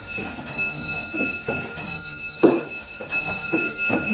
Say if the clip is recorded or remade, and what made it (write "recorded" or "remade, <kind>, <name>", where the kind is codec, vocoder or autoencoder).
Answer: remade, autoencoder, DAC-VAE